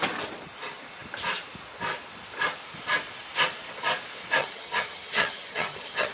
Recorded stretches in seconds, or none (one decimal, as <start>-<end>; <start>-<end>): 0.0-4.4